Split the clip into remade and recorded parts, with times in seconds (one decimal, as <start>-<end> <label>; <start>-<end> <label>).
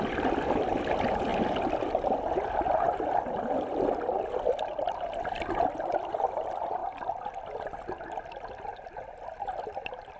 0.0-1.3 remade; 1.3-3.2 recorded; 3.2-6.8 remade; 6.8-7.5 recorded; 7.5-10.2 remade